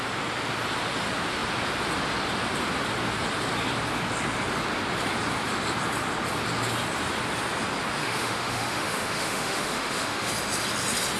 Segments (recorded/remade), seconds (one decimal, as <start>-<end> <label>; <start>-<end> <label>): 0.0-8.0 recorded; 8.0-10.3 remade; 10.3-11.2 recorded